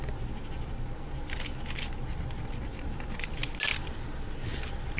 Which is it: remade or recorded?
recorded